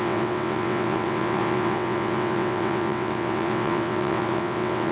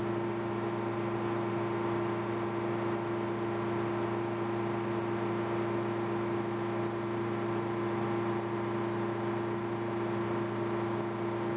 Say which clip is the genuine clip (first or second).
second